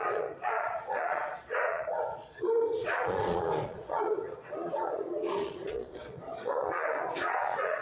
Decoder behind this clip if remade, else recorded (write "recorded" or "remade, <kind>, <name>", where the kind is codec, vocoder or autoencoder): remade, vocoder, Vocos